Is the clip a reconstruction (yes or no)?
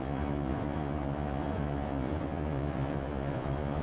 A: yes